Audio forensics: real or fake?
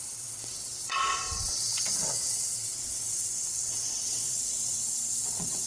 fake